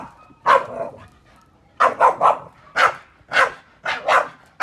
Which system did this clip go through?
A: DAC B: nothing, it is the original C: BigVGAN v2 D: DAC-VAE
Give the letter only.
B